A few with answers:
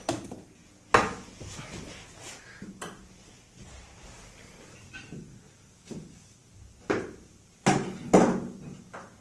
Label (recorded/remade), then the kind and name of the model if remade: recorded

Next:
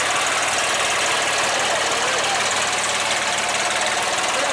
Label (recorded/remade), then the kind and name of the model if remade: recorded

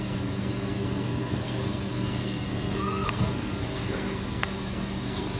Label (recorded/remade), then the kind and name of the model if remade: remade, codec, SNAC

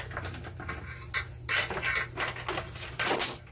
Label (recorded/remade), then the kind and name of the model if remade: recorded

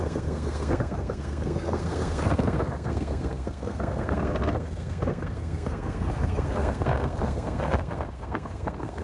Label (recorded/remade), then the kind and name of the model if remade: remade, codec, SNAC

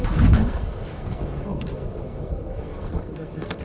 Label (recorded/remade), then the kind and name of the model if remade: remade, codec, SNAC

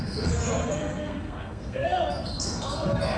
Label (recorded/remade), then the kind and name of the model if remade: remade, codec, SNAC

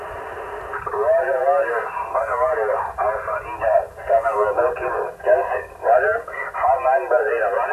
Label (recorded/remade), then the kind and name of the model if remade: recorded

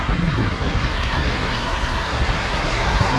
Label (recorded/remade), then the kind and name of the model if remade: remade, codec, SNAC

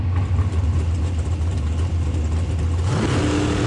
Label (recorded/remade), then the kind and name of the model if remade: recorded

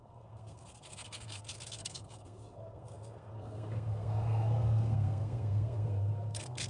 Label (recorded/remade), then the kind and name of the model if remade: remade, codec, SNAC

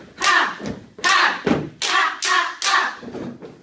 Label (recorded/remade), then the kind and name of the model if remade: recorded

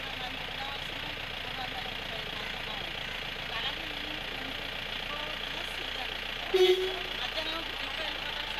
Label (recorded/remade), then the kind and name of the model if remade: recorded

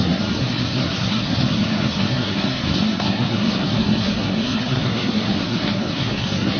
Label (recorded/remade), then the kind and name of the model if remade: remade, codec, SNAC